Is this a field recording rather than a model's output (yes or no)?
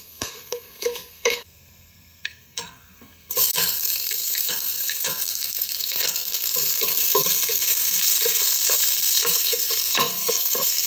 no